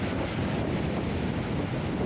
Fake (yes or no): no